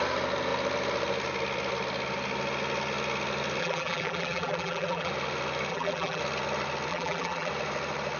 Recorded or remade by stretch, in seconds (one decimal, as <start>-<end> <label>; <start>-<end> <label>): 0.0-3.6 recorded; 3.6-5.1 remade; 5.1-5.7 recorded; 5.7-6.2 remade; 6.2-6.9 recorded; 6.9-7.5 remade; 7.5-8.2 recorded